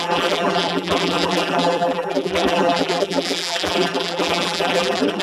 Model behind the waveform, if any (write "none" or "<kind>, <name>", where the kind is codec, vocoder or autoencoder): vocoder, BigVGAN v2